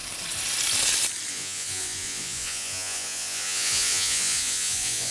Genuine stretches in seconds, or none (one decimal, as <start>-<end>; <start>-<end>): 0.0-1.3